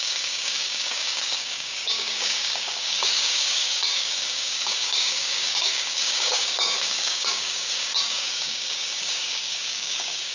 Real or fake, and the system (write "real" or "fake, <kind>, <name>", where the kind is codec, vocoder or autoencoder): fake, codec, DAC